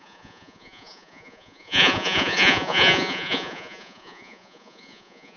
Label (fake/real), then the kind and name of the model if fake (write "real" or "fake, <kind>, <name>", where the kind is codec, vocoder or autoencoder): fake, vocoder, Vocos